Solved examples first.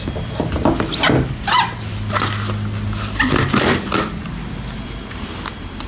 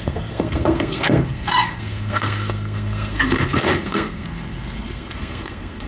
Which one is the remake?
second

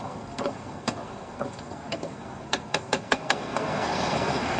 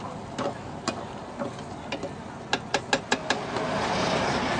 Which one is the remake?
first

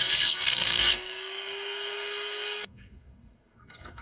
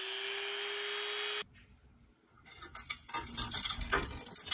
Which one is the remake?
first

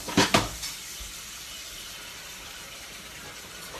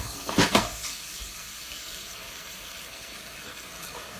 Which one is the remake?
second